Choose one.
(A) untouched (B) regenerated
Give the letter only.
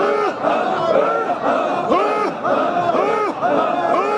A